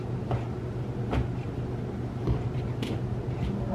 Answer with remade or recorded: recorded